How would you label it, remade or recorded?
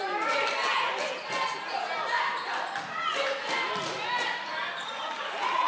recorded